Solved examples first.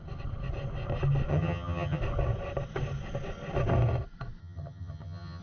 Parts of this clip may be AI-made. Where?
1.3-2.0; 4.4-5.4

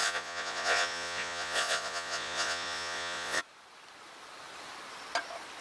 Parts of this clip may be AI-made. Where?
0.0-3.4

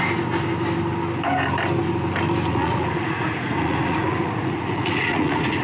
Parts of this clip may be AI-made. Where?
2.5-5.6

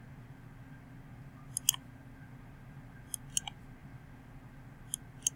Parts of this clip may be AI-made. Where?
none